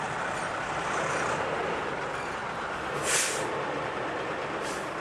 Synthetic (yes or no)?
yes